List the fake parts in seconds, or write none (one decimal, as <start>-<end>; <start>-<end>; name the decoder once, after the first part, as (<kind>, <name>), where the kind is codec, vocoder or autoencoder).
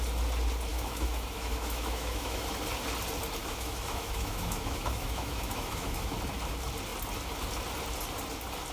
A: 0.7-2.5 (autoencoder, DAC-VAE); 3.4-6.1